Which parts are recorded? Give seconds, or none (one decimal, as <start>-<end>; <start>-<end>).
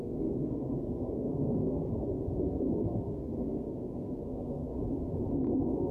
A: 1.9-2.4; 4.7-5.3